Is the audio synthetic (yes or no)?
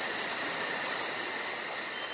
no